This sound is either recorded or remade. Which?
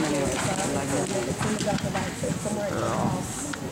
recorded